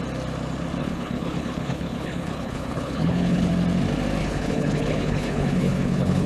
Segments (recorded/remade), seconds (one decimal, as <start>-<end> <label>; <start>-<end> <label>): 0.0-0.8 recorded; 0.8-3.5 remade; 3.5-4.2 recorded; 4.2-6.3 remade